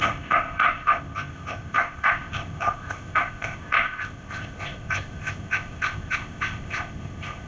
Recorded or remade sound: remade